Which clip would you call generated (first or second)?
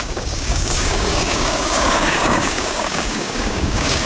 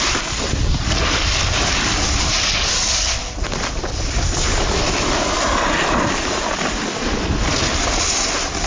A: first